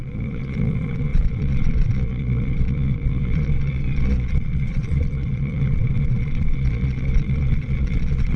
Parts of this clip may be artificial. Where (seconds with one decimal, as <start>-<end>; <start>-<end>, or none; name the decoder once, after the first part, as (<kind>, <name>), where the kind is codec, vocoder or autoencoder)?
0.0-8.4 (vocoder, Vocos)

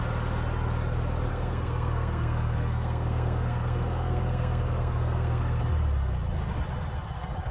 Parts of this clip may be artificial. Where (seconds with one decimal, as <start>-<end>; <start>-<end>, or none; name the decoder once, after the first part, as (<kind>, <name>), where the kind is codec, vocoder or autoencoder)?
1.3-5.6 (codec, SNAC)

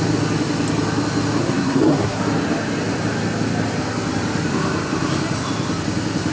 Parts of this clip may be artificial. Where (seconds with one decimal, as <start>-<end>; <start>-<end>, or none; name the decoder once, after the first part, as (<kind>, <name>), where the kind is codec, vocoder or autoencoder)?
1.4-2.2 (codec, SNAC)

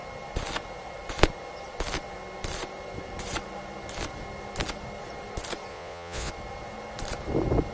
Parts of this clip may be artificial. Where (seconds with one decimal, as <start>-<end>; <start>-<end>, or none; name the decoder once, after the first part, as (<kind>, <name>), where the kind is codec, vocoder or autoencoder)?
5.7-6.3 (vocoder, Vocos)

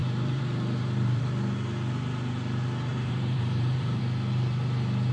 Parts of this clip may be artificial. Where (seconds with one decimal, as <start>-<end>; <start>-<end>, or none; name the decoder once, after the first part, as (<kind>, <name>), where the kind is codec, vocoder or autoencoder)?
0.0-1.2 (vocoder, BigVGAN v2); 2.9-4.0

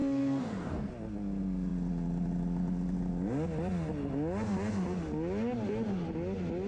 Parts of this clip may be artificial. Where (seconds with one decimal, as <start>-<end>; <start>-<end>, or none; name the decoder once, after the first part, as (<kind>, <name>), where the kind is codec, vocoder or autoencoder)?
0.0-0.9 (codec, SNAC)

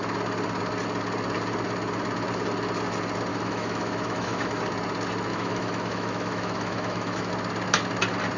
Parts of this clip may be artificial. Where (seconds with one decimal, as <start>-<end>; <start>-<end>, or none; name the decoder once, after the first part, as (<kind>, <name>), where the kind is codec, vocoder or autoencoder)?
3.3-4.6 (autoencoder, DAC-VAE); 5.3-7.3

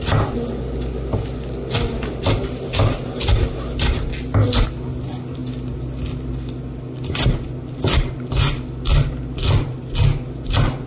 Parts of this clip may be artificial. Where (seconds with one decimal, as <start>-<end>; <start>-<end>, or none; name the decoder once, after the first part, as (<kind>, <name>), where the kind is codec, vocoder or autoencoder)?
none